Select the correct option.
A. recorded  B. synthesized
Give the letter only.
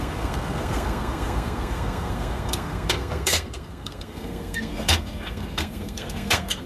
B